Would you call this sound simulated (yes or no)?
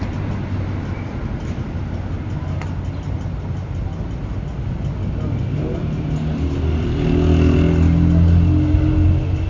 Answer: no